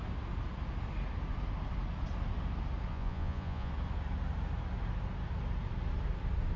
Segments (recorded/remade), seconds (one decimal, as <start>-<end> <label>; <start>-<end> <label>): 0.0-2.9 recorded; 2.9-3.7 remade; 3.7-6.6 recorded